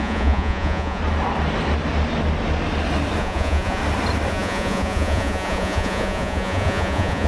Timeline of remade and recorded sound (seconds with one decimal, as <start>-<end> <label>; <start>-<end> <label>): 0.0-1.0 remade; 1.0-3.2 recorded; 3.2-3.8 remade; 3.8-4.3 recorded; 4.3-7.3 remade

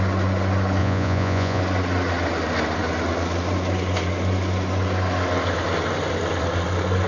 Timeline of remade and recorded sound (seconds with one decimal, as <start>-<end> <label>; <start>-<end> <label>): 0.0-0.8 recorded; 0.8-1.6 remade; 1.6-7.1 recorded